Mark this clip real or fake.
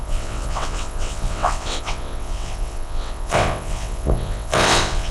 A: fake